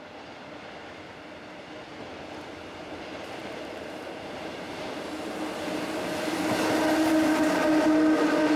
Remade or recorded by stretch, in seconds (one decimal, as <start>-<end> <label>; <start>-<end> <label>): 0.0-3.4 recorded; 3.4-4.8 remade; 4.8-8.6 recorded